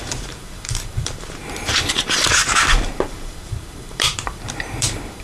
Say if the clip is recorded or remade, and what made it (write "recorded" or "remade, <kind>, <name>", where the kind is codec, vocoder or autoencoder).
remade, vocoder, BigVGAN v2